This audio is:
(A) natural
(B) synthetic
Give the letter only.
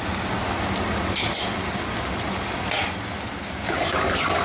A